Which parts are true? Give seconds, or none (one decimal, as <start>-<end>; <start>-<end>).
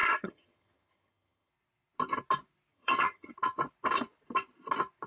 1.5-2.7; 3.3-5.1